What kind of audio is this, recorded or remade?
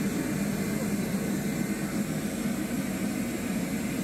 recorded